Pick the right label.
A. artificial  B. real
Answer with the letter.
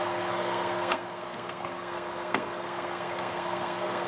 A